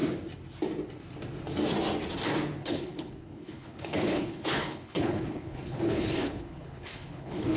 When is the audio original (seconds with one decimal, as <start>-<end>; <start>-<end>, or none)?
0.0-2.6

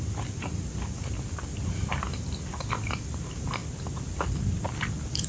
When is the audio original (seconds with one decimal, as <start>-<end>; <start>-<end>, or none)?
0.0-5.3

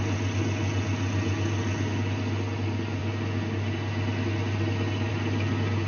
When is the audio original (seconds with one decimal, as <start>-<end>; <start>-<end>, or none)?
0.0-5.9

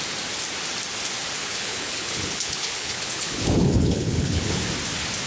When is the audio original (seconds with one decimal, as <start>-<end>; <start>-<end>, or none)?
0.0-1.4; 4.6-5.3